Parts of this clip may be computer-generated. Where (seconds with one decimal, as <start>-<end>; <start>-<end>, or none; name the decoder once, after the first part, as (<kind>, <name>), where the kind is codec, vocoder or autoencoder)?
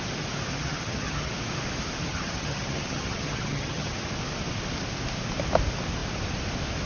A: 0.5-1.3 (vocoder, HiFi-GAN); 2.1-3.9